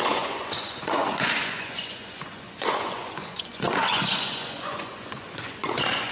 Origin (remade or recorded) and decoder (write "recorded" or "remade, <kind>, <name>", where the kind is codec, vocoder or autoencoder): remade, vocoder, Vocos